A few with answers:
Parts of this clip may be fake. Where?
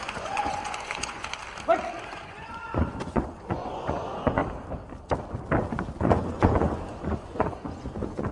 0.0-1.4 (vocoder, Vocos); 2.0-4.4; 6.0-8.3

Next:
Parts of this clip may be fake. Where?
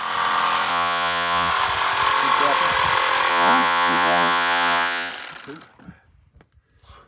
0.7-1.5 (vocoder, Vocos); 3.3-5.1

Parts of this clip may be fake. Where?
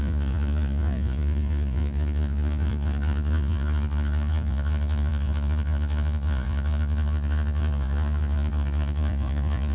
0.0-9.7 (vocoder, Vocos)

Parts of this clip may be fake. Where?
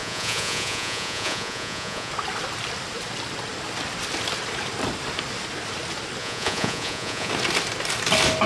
0.0-2.1 (vocoder, Vocos); 6.2-7.3